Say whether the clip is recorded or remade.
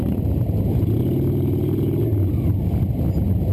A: recorded